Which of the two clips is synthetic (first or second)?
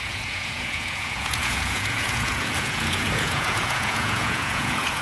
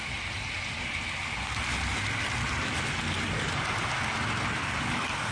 first